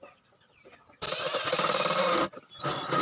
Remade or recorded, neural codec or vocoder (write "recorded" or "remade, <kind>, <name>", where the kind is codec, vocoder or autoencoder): recorded